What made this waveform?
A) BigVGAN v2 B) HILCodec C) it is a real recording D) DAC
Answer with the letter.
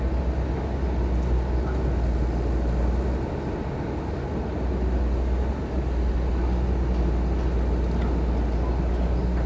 C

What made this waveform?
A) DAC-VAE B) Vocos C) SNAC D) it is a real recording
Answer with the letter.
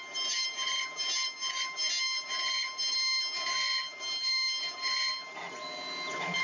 D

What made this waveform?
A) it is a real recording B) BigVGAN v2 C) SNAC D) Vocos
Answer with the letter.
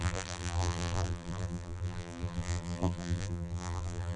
B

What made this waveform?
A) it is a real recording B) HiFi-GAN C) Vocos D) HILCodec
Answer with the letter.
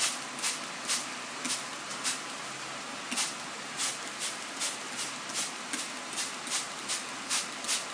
A